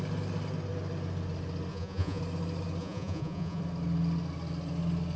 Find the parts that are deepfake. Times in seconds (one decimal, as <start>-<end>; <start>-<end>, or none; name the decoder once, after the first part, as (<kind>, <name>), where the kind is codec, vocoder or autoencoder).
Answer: 1.7-2.2 (vocoder, Vocos); 2.8-3.6